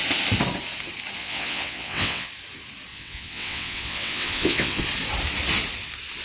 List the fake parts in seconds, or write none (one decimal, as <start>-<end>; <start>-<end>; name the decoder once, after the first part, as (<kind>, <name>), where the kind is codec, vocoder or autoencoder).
1.2-2.3 (vocoder, WaveNeXt); 2.9-4.8